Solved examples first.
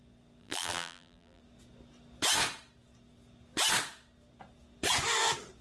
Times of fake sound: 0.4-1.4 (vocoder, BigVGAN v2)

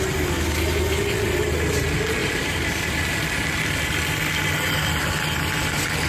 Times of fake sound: 2.2-3.0 (vocoder, BigVGAN v2)

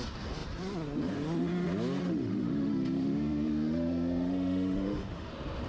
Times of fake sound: 2.0-5.3 (autoencoder, DAC-VAE)